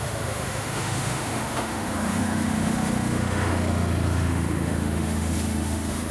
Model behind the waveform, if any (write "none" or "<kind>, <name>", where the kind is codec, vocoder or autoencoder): autoencoder, DAC-VAE